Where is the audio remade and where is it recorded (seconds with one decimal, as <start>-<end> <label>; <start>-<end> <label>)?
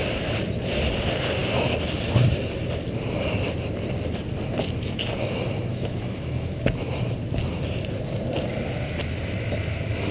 0.0-5.7 recorded; 5.7-6.6 remade; 6.6-10.1 recorded